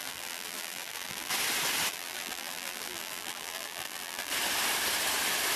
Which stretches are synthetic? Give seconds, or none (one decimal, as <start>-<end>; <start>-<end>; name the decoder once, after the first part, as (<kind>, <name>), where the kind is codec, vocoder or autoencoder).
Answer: 0.0-1.3 (vocoder, BigVGAN v2); 1.9-4.3